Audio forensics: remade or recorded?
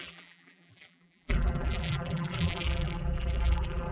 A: remade